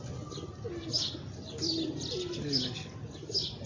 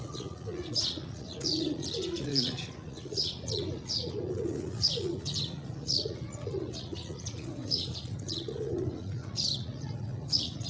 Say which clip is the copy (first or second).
second